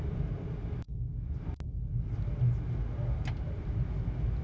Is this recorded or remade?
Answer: recorded